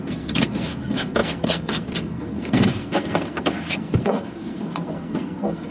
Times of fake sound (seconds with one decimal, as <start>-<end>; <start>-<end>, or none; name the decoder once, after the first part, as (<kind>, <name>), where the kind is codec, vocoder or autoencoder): 0.0-5.7 (codec, SNAC)